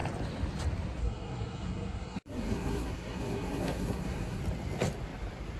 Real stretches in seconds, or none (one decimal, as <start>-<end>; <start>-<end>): 0.0-1.0; 4.4-5.6